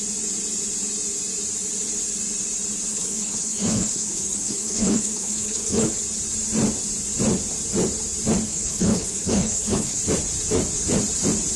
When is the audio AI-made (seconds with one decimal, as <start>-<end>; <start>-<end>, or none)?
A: 2.9-6.0; 8.5-10.0